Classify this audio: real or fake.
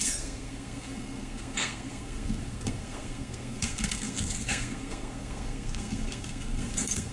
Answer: fake